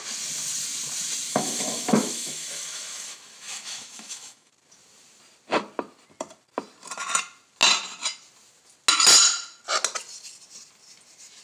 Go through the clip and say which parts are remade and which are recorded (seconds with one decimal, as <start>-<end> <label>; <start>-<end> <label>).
0.0-1.3 recorded; 1.3-4.5 remade; 4.5-11.4 recorded